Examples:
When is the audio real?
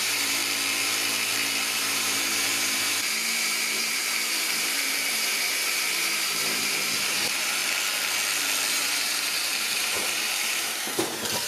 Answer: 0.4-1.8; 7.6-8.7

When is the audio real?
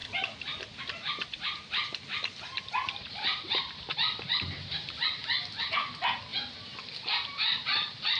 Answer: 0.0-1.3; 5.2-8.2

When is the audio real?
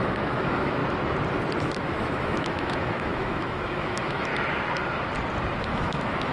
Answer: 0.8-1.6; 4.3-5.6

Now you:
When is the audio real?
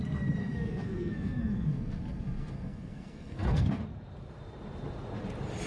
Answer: 0.0-0.4; 3.8-5.7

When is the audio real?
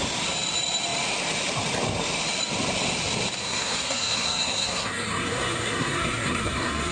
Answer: 0.0-3.4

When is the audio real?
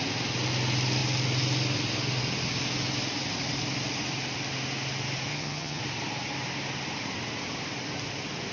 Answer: 0.0-5.3; 5.8-8.5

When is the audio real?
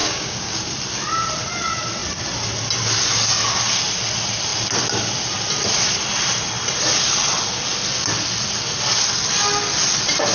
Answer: 0.6-10.3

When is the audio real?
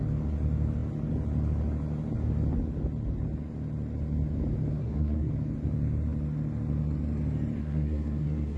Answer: 0.0-4.7; 5.3-7.6